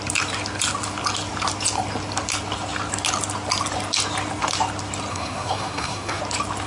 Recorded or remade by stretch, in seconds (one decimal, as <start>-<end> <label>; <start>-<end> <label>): 0.0-5.1 recorded; 5.1-6.2 remade; 6.2-6.7 recorded